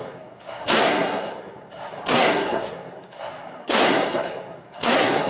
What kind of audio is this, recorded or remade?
remade